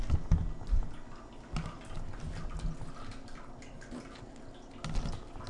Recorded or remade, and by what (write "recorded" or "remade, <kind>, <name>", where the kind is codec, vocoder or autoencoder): recorded